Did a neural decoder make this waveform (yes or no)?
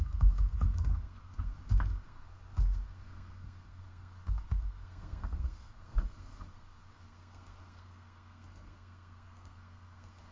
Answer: yes